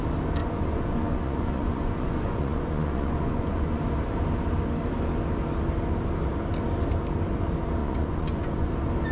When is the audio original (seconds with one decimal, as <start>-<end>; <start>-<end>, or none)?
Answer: 0.0-0.4; 3.8-7.8; 8.7-9.1